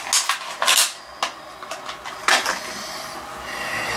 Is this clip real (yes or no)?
yes